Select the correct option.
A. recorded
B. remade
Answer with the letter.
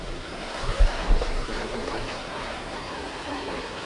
B